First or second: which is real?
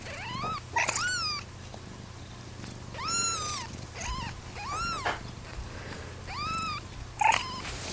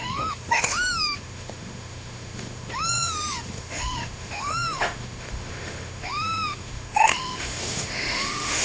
first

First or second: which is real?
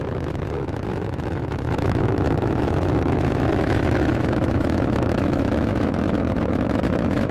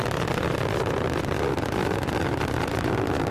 second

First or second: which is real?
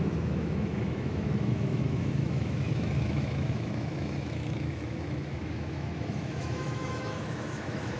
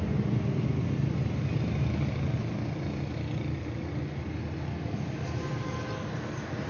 second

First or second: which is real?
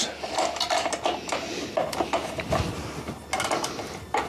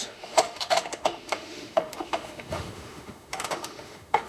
first